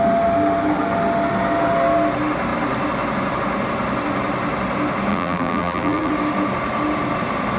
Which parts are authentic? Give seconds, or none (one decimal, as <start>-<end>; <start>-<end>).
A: 0.0-5.1; 6.1-7.6